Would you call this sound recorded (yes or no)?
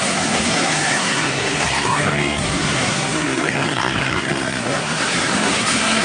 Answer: no